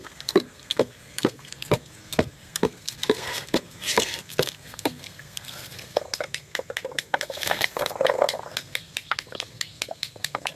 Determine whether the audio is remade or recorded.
remade